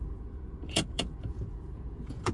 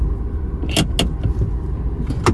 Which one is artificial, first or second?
first